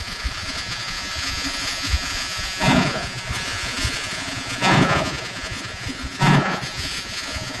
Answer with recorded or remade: remade